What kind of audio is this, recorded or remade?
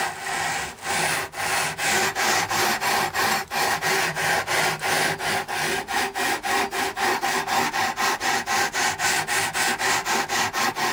recorded